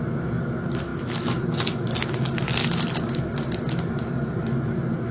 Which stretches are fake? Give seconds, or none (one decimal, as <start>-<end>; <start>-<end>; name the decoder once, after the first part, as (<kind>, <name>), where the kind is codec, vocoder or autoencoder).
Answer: none